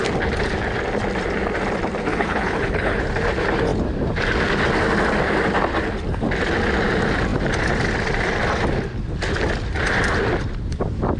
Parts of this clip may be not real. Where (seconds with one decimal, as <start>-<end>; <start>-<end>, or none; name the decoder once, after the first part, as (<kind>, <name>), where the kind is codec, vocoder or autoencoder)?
2.1-3.0 (codec, HILCodec)